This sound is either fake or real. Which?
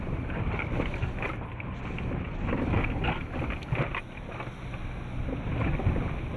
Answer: real